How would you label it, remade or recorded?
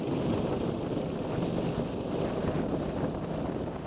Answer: recorded